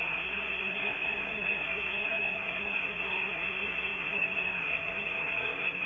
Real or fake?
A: fake